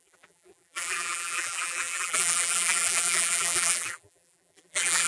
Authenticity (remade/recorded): remade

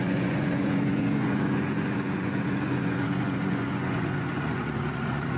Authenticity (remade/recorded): remade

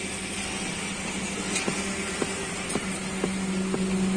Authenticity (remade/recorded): recorded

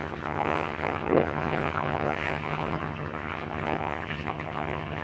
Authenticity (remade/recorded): remade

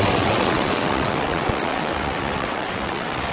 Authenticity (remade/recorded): remade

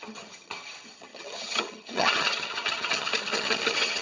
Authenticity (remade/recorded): remade